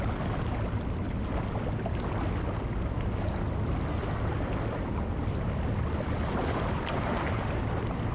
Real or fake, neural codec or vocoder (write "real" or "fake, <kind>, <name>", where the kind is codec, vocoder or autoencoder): real